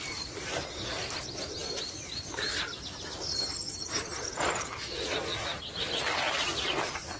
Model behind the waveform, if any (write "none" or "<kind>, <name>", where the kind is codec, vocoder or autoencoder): none